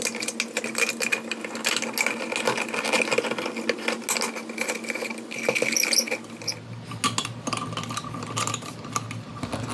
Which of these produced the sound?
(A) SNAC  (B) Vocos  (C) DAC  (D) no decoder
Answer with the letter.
D